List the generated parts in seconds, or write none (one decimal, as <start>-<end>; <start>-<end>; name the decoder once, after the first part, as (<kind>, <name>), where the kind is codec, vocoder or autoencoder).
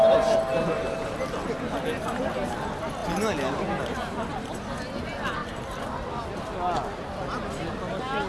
none